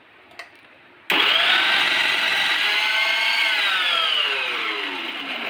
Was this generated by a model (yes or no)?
no